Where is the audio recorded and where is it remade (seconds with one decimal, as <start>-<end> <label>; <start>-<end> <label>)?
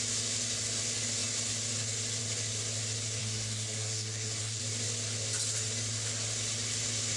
0.0-3.2 recorded; 3.2-4.6 remade; 4.6-7.2 recorded